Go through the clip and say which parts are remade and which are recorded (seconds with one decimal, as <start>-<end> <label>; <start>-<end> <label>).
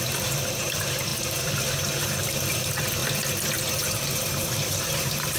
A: 0.0-3.0 remade; 3.0-4.3 recorded; 4.3-5.4 remade